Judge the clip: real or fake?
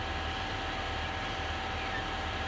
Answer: real